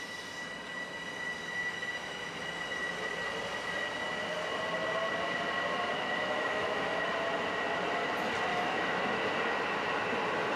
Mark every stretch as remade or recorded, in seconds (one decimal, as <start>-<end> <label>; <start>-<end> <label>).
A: 0.0-1.4 recorded; 1.4-2.4 remade; 2.4-5.9 recorded; 5.9-7.1 remade; 7.1-8.5 recorded; 8.5-9.2 remade; 9.2-10.6 recorded